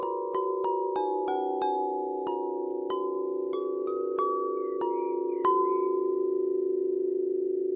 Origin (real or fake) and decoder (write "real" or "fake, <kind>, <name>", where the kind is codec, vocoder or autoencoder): real